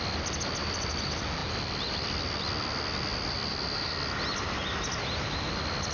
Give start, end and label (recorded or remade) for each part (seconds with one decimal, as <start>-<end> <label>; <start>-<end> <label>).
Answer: 0.0-5.9 recorded